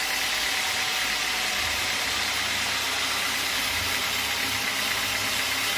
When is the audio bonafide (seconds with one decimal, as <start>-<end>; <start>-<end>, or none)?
0.0-1.2; 4.7-5.8